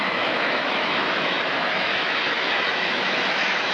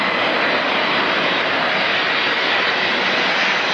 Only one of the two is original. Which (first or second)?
second